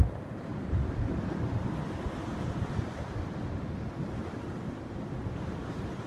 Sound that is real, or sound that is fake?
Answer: real